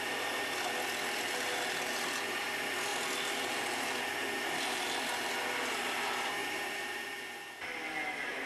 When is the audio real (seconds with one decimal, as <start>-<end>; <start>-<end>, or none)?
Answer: 0.0-6.4; 7.2-8.5